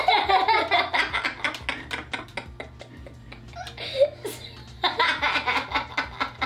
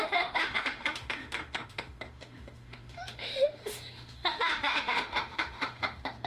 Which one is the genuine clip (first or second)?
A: first